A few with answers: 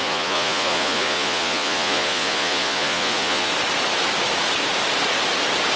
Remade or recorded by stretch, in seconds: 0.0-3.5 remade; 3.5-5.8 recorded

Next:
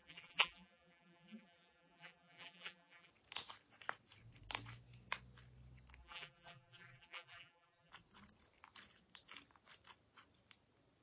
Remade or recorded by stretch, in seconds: 0.0-3.1 remade; 3.1-6.0 recorded; 6.0-7.9 remade; 7.9-11.0 recorded

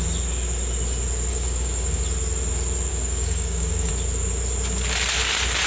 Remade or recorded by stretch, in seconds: 0.0-1.3 recorded; 1.3-2.0 remade; 2.0-2.9 recorded; 2.9-3.9 remade; 3.9-5.7 recorded

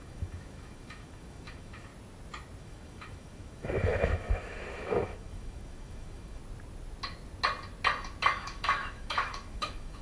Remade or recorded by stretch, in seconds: 0.0-1.9 remade; 1.9-2.6 recorded; 2.6-6.4 remade; 6.4-8.3 recorded; 8.3-10.0 remade

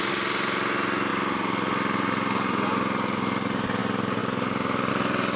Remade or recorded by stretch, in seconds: 0.0-5.4 recorded

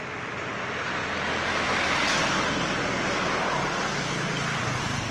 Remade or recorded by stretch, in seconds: 0.0-1.0 remade; 1.0-3.9 recorded; 3.9-5.1 remade

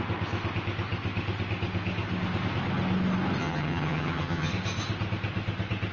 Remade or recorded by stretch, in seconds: 0.0-3.4 recorded; 3.4-4.5 remade; 4.5-5.9 recorded

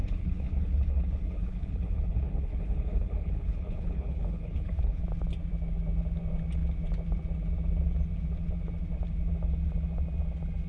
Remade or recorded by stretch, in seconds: 0.0-5.0 remade; 5.0-10.7 recorded